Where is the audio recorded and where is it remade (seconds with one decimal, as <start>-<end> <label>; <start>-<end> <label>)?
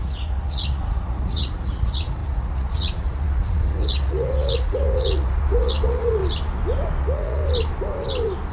0.0-6.2 remade; 6.2-7.0 recorded; 7.0-7.4 remade; 7.4-8.5 recorded